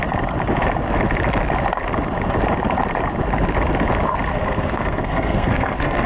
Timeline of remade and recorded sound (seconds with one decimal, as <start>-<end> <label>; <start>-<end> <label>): 0.0-4.3 recorded; 4.3-6.1 remade